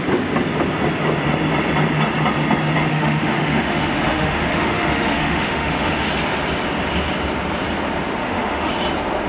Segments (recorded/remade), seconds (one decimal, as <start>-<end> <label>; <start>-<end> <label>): 0.0-2.9 recorded; 2.9-6.1 remade; 6.1-8.2 recorded; 8.2-8.7 remade; 8.7-9.3 recorded